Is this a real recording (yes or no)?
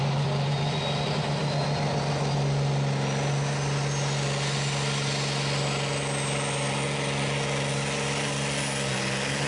yes